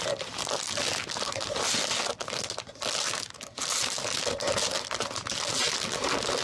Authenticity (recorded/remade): recorded